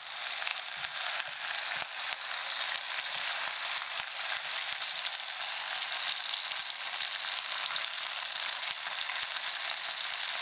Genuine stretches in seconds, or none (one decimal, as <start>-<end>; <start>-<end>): 0.0-10.4